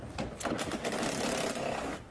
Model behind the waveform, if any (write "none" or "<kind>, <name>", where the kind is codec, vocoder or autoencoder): vocoder, BigVGAN v2